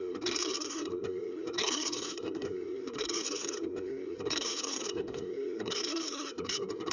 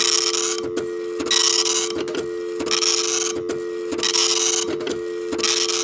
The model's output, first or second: first